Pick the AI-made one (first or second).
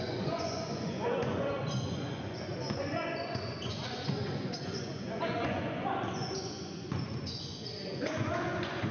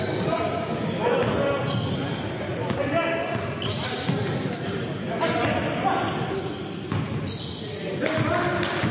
first